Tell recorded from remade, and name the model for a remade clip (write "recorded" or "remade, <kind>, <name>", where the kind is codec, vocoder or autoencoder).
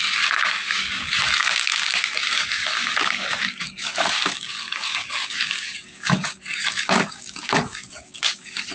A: remade, codec, DAC